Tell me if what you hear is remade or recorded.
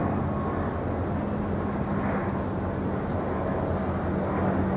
recorded